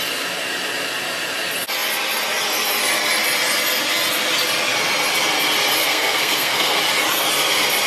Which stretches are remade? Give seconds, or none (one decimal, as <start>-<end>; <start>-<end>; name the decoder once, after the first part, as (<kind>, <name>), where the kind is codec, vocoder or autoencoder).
5.8-6.8 (codec, SNAC)